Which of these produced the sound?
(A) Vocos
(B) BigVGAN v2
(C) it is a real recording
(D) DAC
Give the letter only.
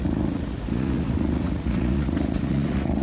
A